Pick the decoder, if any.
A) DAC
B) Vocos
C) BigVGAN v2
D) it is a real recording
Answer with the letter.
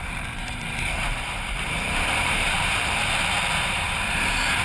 C